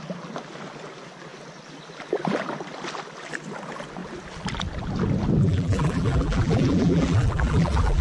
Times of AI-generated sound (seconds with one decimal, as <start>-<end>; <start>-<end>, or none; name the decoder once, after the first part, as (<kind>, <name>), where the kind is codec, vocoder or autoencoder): 5.4-8.0 (vocoder, BigVGAN v2)